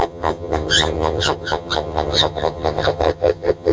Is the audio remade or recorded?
remade